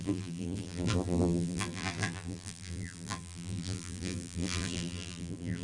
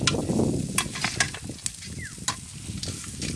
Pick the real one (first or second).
second